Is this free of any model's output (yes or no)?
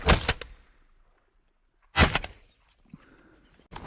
yes